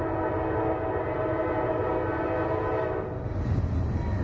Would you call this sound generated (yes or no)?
no